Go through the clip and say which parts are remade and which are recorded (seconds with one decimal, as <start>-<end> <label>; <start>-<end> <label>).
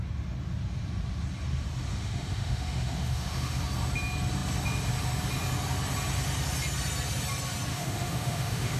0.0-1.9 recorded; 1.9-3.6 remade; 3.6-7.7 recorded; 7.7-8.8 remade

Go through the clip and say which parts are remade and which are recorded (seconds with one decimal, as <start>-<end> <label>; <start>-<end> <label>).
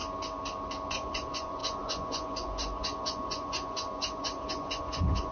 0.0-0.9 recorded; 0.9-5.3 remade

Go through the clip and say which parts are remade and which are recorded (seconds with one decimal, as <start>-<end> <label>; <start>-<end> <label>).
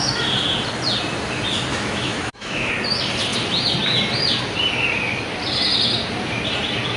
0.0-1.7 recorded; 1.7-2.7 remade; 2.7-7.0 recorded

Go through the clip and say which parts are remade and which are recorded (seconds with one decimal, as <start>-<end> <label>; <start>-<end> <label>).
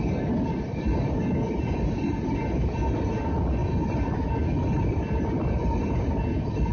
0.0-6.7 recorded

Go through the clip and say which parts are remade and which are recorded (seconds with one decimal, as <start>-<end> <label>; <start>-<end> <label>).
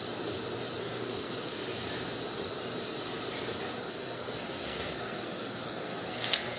0.0-0.8 recorded; 0.8-1.6 remade; 1.6-3.9 recorded; 3.9-6.6 remade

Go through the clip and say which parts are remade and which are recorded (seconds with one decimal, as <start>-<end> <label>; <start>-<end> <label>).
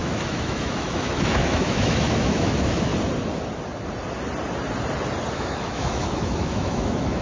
0.0-2.9 remade; 2.9-5.3 recorded; 5.3-7.2 remade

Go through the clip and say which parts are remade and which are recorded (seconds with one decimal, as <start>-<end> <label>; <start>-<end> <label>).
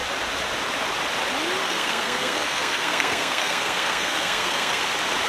0.0-1.6 recorded; 1.6-4.8 remade; 4.8-5.3 recorded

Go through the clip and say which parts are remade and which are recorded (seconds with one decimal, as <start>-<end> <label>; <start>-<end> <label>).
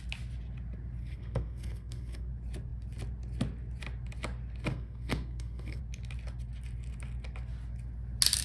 0.0-1.0 recorded; 1.0-2.3 remade; 2.3-4.7 recorded; 4.7-5.8 remade; 5.8-8.4 recorded